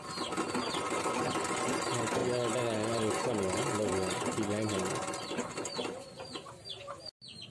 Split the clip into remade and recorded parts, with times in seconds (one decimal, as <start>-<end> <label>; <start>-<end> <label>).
0.0-7.5 recorded